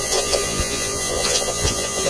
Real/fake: fake